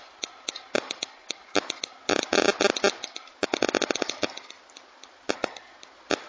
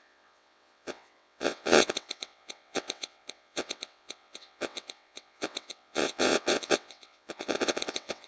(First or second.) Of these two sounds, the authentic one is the first